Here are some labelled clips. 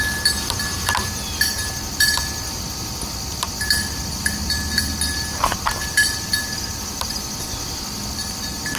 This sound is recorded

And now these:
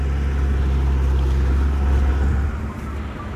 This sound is recorded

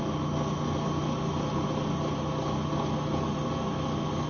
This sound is recorded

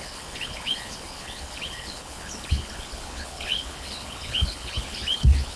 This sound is remade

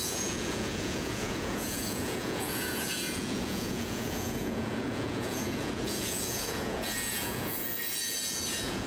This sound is remade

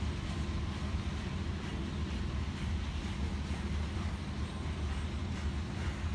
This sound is recorded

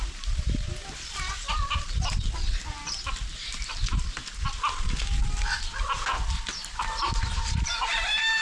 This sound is recorded